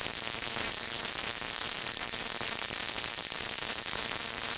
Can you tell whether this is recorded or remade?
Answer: remade